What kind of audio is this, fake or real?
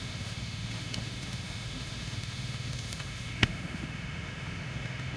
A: fake